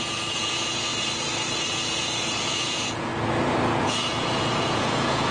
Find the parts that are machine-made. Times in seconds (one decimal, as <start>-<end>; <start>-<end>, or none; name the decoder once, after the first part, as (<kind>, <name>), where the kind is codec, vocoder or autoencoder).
0.0-0.9 (vocoder, Vocos); 1.7-3.1; 3.8-5.3